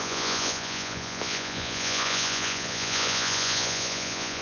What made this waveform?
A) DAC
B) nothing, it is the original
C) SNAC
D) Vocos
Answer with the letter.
D